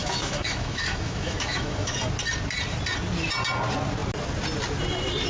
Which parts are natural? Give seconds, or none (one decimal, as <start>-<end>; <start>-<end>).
2.0-5.3